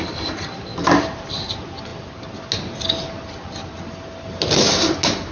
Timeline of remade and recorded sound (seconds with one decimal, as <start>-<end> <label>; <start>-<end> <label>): 0.0-0.7 recorded; 0.7-1.5 remade; 1.5-5.3 recorded